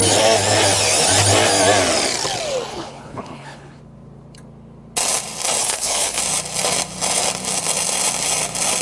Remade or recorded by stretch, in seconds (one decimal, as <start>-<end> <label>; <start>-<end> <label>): 0.0-2.7 recorded; 2.7-3.8 remade; 3.8-5.6 recorded; 5.6-6.2 remade; 6.2-8.8 recorded